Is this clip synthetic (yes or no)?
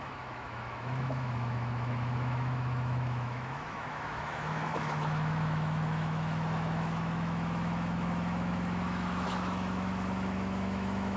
yes